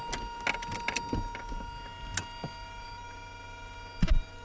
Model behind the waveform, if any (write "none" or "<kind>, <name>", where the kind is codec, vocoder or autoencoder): none